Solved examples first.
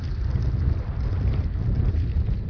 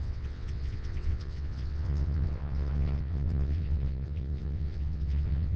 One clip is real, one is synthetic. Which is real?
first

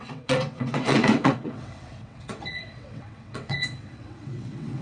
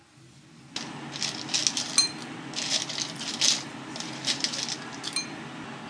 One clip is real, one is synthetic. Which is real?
second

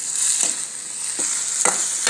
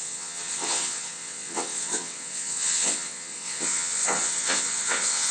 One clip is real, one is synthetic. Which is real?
first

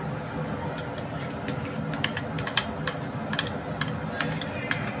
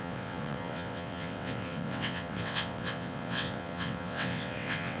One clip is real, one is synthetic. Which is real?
first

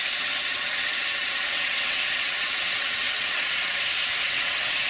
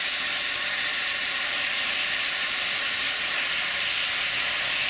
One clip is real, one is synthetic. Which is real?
second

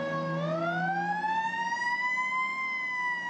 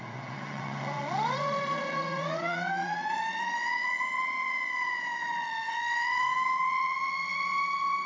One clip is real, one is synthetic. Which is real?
first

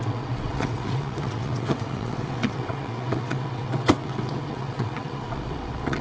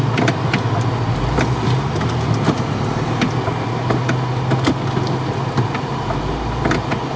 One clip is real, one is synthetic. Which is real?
second